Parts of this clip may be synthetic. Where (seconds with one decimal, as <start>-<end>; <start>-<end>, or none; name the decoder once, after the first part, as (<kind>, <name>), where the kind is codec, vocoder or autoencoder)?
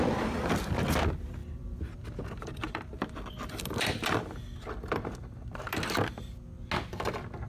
1.4-4.2 (vocoder, BigVGAN v2)